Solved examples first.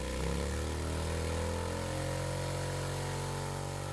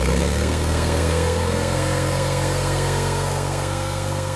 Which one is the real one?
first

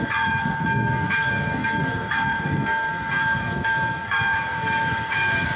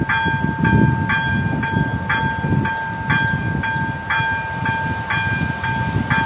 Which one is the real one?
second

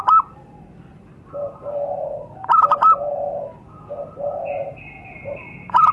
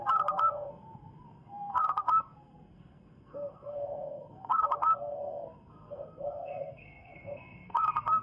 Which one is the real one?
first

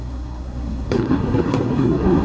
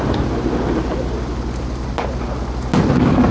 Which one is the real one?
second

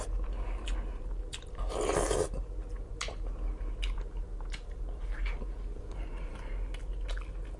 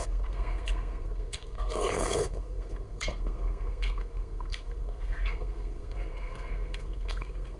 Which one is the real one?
first